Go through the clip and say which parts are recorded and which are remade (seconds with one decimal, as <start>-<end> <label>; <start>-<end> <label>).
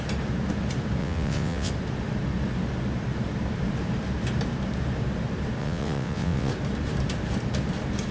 0.0-1.0 recorded; 1.0-1.7 remade; 1.7-5.6 recorded; 5.6-6.5 remade; 6.5-8.1 recorded